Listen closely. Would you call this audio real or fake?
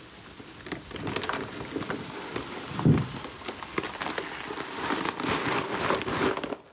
real